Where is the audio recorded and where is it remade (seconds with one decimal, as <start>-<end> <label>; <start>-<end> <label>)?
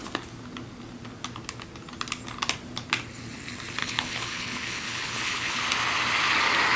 0.0-3.8 recorded; 3.8-5.6 remade; 5.6-6.8 recorded